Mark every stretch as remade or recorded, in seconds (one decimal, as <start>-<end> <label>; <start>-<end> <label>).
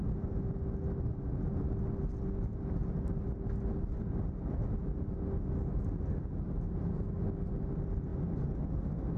0.0-9.2 recorded